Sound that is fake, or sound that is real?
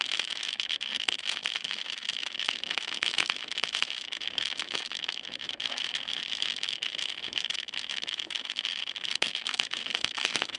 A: fake